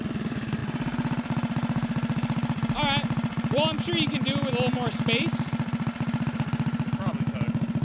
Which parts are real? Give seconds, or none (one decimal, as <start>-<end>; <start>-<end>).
0.0-7.8